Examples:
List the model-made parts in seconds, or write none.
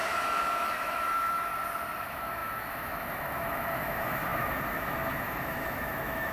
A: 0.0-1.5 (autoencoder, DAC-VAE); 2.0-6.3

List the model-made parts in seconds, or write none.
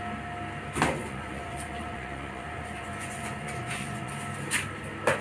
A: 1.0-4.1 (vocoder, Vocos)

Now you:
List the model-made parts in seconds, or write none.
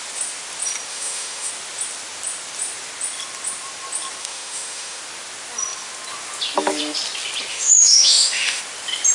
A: 0.9-1.5 (autoencoder, DAC-VAE); 4.2-5.0; 7.5-8.6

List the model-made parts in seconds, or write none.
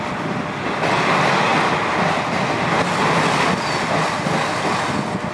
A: none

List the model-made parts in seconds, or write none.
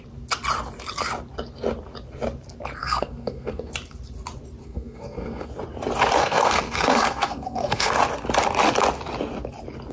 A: 2.8-3.7 (codec, SNAC); 4.6-5.5; 6.2-7.9